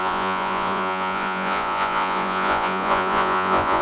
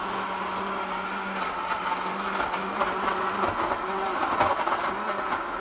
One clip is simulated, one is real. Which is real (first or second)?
second